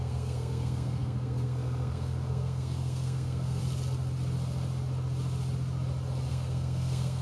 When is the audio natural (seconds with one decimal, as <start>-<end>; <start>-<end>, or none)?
3.6-6.3